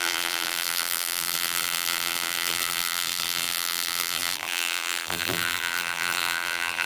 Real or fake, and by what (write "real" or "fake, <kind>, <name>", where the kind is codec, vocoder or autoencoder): fake, vocoder, BigVGAN v2